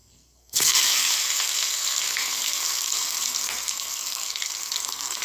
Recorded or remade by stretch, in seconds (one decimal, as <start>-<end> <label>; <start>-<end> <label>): 0.0-5.2 remade